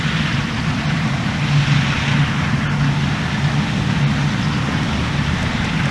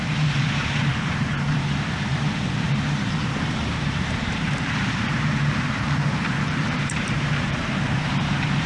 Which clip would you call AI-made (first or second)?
second